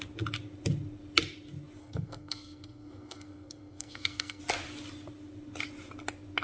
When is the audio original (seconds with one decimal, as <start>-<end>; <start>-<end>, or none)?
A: 0.0-1.8; 4.4-6.4